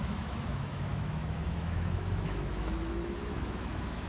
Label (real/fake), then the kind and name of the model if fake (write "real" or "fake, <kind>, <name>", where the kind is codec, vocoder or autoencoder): fake, autoencoder, DAC-VAE